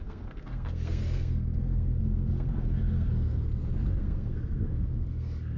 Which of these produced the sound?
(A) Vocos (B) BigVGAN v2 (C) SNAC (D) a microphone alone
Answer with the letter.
C